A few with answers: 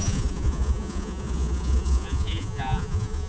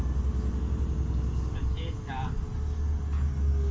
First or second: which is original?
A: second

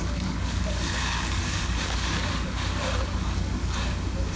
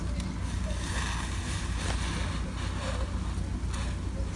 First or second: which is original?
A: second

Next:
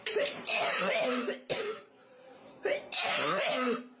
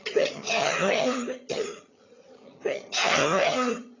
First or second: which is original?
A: first